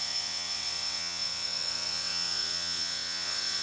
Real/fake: fake